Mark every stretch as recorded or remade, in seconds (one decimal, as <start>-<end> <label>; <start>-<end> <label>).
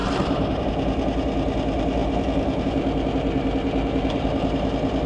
0.0-0.6 remade; 0.6-5.1 recorded